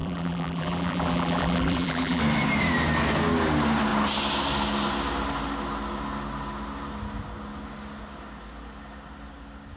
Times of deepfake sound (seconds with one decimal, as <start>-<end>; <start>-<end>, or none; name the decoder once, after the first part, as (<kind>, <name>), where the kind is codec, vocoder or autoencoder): 0.0-2.2 (vocoder, BigVGAN v2)